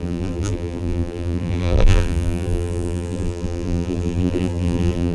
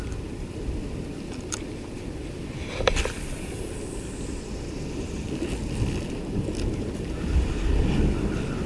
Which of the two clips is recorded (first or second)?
second